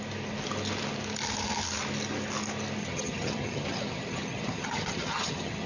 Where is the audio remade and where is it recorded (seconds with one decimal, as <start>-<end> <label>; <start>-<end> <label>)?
0.0-2.8 recorded; 2.8-5.7 remade